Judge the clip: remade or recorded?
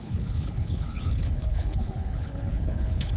remade